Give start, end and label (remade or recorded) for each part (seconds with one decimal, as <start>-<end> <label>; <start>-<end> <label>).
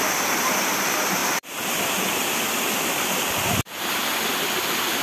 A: 0.0-1.2 recorded; 1.2-3.8 remade; 3.8-5.0 recorded